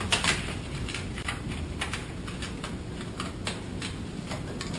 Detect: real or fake real